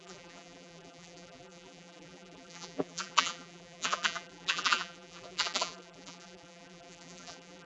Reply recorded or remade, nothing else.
remade